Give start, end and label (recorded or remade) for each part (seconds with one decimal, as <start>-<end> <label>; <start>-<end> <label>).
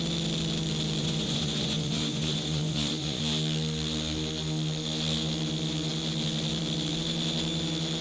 0.0-1.0 recorded; 1.0-3.2 remade; 3.2-8.0 recorded